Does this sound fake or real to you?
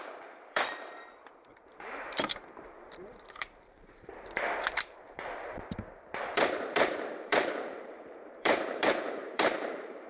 fake